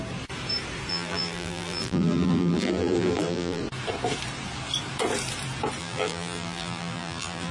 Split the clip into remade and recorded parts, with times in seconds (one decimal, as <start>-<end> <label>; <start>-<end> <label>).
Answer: 0.0-0.9 recorded; 0.9-3.6 remade; 3.6-5.8 recorded; 5.8-7.5 remade